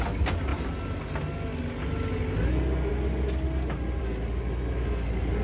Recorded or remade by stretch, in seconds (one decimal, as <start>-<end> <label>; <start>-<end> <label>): 0.0-5.4 recorded